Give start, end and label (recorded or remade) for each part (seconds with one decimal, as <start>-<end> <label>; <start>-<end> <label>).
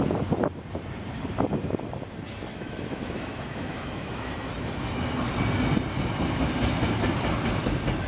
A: 0.0-2.5 recorded; 2.5-4.3 remade; 4.3-8.1 recorded